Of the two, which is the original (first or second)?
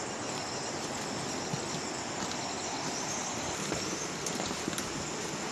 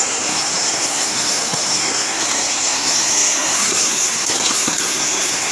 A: first